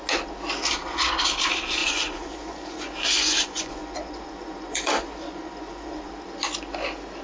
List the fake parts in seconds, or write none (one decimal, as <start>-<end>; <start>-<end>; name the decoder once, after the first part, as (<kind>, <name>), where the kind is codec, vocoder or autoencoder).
1.8-6.1 (vocoder, Vocos)